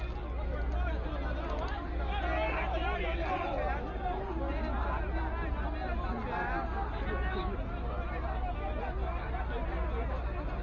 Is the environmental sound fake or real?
real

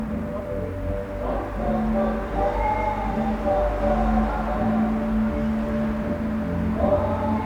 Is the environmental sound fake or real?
real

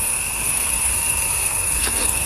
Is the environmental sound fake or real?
fake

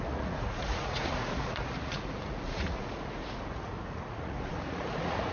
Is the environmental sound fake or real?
fake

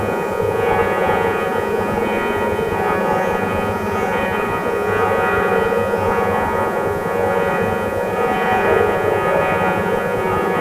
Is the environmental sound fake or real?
fake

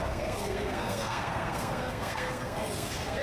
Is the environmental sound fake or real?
fake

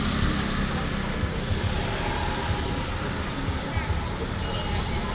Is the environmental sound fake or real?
real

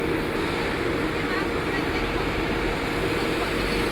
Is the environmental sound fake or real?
real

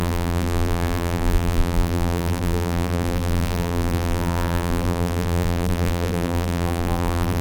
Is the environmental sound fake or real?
fake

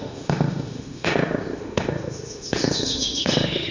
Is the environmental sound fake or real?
fake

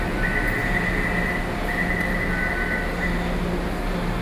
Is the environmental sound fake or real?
real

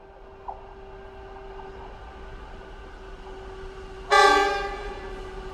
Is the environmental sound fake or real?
real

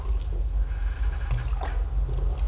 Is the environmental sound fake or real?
real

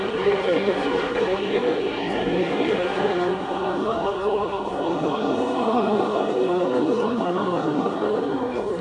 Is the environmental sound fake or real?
fake